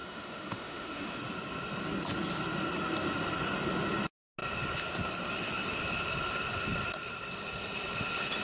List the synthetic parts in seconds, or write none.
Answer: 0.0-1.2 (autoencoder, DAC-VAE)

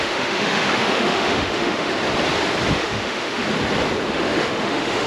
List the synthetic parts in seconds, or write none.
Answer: 0.0-1.9 (autoencoder, DAC-VAE); 2.7-3.4; 4.1-5.1

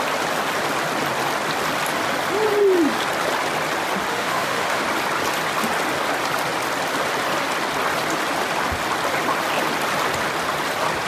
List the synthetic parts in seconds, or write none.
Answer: 4.1-4.8 (autoencoder, DAC-VAE)

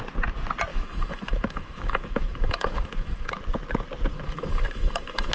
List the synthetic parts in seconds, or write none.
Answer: 0.7-3.3 (autoencoder, DAC-VAE); 4.1-5.3